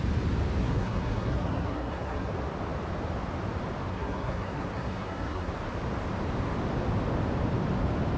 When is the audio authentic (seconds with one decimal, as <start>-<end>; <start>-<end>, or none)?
0.0-0.6; 2.3-3.9; 5.5-8.2